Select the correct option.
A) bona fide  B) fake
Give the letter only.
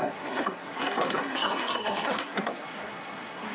B